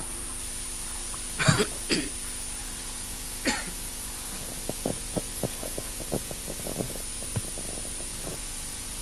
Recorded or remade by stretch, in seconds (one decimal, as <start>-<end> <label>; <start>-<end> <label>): 0.0-2.6 recorded; 2.6-7.0 remade; 7.0-8.1 recorded; 8.1-9.0 remade